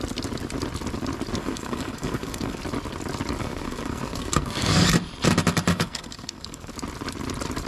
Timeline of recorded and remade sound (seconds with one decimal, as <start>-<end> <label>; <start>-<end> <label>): 0.0-1.4 recorded; 1.4-2.6 remade; 2.6-3.4 recorded; 3.4-4.8 remade; 4.8-5.7 recorded; 5.7-6.7 remade; 6.7-7.7 recorded